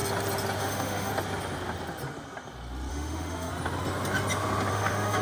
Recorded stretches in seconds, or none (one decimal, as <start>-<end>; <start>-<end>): 0.0-0.6; 1.1-2.9; 3.5-4.7